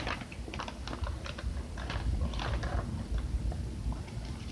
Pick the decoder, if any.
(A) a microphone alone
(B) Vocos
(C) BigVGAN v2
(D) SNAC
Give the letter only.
A